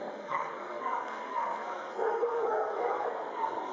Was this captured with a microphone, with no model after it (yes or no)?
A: no